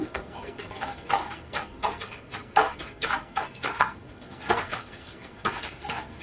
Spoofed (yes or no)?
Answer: yes